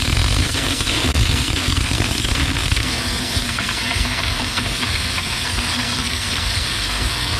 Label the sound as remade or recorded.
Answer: remade